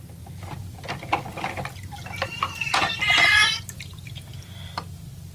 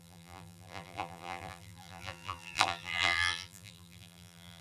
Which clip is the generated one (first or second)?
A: second